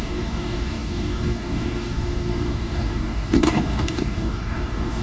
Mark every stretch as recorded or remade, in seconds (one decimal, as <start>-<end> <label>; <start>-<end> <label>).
0.0-5.0 remade